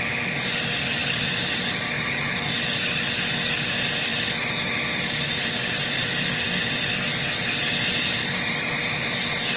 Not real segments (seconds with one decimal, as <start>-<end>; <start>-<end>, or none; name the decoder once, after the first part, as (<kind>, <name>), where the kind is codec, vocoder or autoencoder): none